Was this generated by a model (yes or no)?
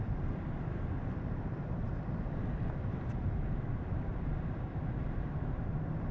yes